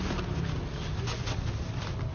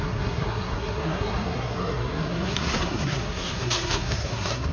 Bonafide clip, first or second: first